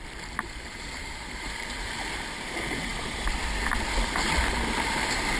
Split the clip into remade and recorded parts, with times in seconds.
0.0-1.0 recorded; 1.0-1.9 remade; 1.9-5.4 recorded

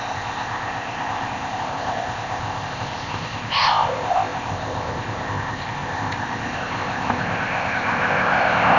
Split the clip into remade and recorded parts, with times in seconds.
0.0-8.8 remade

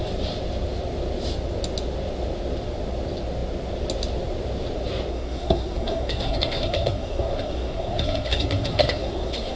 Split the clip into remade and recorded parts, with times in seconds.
0.0-5.1 recorded; 5.1-9.6 remade

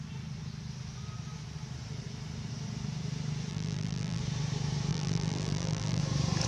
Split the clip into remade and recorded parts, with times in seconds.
0.0-3.5 recorded; 3.5-4.2 remade; 4.2-4.9 recorded; 4.9-6.0 remade; 6.0-6.5 recorded

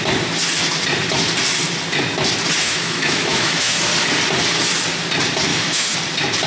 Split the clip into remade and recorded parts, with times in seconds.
0.0-2.6 recorded; 2.6-3.8 remade; 3.8-5.5 recorded; 5.5-6.0 remade; 6.0-6.5 recorded

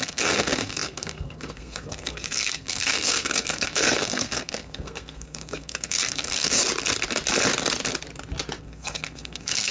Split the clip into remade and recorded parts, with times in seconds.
0.0-6.6 remade; 6.6-8.6 recorded; 8.6-9.7 remade

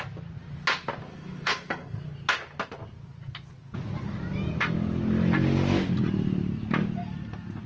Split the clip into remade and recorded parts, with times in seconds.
0.0-1.1 recorded; 1.1-2.0 remade; 2.0-7.7 recorded